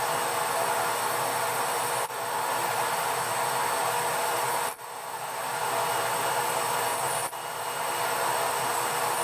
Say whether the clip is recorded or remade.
recorded